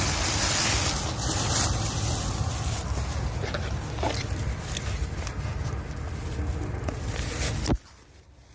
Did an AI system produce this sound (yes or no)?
no